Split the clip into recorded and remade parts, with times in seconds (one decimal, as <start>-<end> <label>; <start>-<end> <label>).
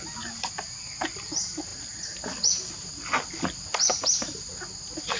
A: 0.0-5.2 recorded